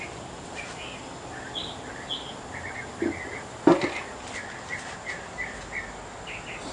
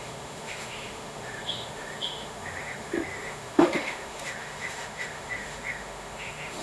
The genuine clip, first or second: first